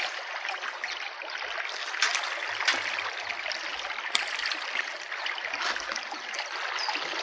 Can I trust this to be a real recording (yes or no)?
yes